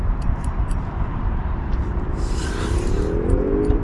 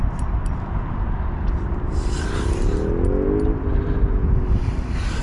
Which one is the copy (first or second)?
first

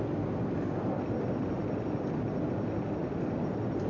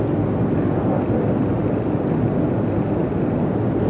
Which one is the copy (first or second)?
first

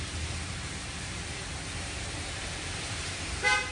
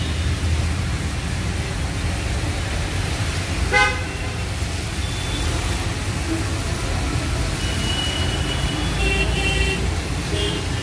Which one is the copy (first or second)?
first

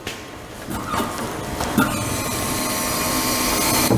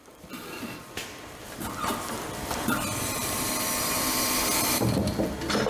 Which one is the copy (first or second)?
second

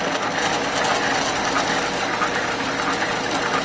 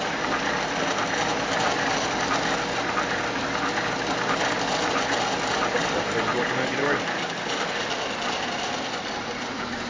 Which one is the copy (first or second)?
second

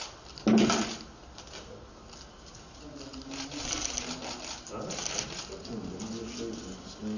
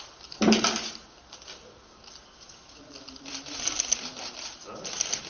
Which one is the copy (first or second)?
second